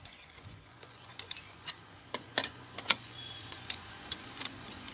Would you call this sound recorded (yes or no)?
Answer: no